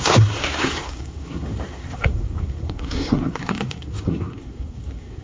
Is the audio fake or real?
fake